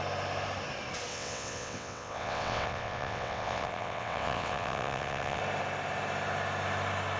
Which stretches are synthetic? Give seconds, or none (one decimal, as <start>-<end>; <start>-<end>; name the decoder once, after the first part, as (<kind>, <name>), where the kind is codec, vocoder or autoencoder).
1.1-5.4 (vocoder, WaveNeXt)